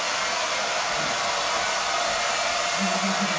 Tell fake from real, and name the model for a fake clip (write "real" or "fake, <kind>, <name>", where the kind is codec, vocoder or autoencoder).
real